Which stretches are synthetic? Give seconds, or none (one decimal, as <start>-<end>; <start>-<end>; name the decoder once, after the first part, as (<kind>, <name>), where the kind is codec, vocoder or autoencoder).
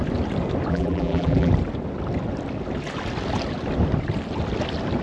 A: 0.7-1.5 (vocoder, BigVGAN v2)